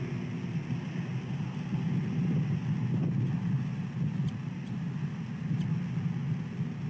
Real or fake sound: real